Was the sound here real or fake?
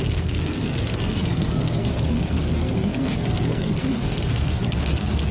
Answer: fake